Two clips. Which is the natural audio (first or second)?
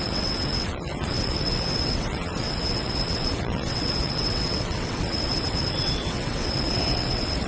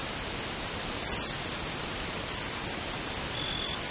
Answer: second